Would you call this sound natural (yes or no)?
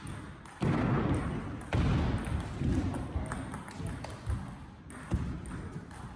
yes